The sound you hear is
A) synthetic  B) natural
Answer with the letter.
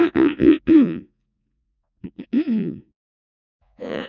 A